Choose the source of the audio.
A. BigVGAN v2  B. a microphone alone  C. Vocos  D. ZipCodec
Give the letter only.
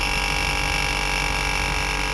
B